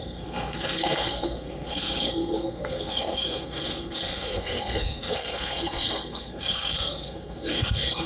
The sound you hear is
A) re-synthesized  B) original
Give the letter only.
A